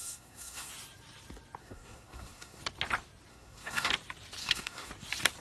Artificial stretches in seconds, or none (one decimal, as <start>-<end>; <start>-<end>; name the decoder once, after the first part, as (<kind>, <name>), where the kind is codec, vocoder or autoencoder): 0.0-0.7 (codec, SNAC); 1.6-2.6; 3.3-3.9; 4.4-4.9